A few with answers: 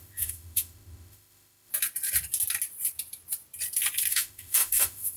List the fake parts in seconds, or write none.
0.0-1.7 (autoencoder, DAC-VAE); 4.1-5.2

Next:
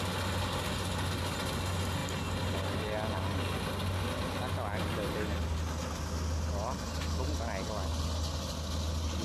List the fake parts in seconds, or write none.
none

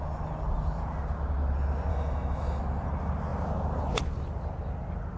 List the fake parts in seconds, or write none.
1.9-2.6 (autoencoder, DAC-VAE)

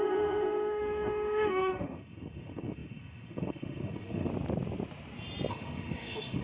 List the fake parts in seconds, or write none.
0.0-4.3 (autoencoder, DAC-VAE); 5.5-6.4

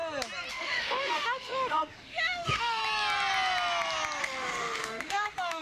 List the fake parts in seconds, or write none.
0.5-2.8 (autoencoder, DAC-VAE); 4.2-5.6

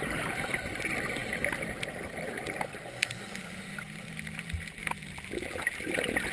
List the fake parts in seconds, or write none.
none

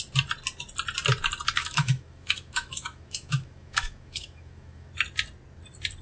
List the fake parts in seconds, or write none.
1.6-4.9 (autoencoder, DAC-VAE)

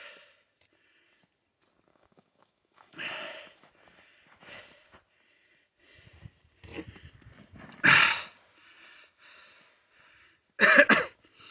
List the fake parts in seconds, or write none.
1.9-3.7 (autoencoder, DAC-VAE)